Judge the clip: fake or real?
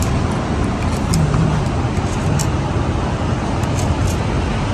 real